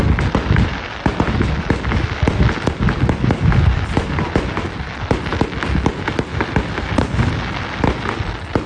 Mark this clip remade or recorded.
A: recorded